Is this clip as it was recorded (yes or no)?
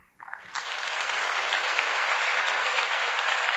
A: no